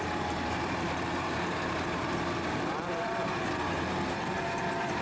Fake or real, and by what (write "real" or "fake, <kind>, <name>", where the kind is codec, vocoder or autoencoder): fake, vocoder, BigVGAN v2